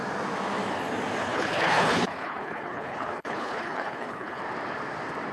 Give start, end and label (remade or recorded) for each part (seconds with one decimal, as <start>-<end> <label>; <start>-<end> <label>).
0.0-1.2 recorded; 1.2-4.4 remade; 4.4-5.3 recorded